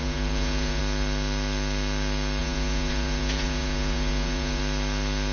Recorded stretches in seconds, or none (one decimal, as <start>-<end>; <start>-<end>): 0.8-2.4; 4.6-5.3